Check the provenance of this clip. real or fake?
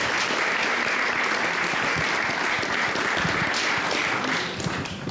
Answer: real